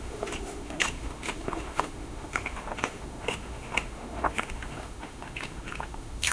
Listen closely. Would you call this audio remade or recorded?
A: remade